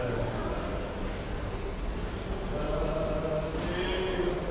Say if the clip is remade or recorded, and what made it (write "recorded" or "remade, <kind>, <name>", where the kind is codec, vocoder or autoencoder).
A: recorded